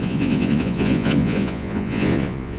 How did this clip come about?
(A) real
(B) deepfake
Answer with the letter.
B